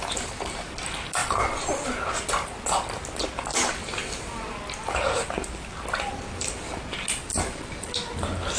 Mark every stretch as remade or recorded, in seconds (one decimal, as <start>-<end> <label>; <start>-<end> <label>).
0.0-8.6 recorded